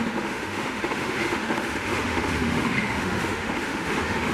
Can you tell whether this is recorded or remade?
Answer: remade